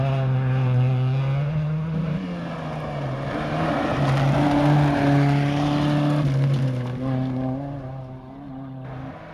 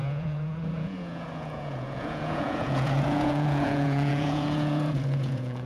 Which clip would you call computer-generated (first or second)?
second